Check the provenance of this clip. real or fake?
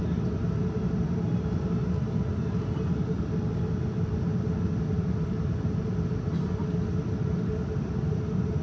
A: real